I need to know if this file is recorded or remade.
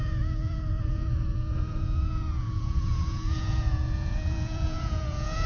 remade